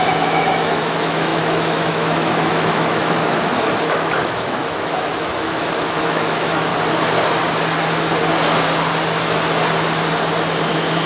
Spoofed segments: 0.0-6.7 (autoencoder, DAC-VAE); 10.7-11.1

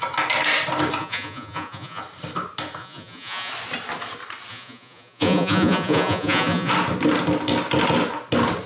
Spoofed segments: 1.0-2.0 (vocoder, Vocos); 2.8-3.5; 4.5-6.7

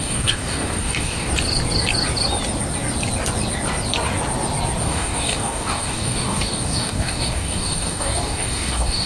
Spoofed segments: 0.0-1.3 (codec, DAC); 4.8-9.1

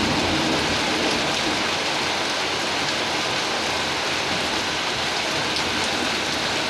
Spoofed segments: none

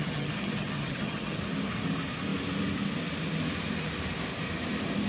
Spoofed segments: 0.0-1.4 (vocoder, HiFi-GAN)